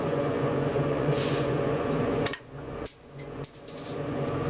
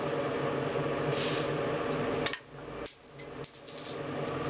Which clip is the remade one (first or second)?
first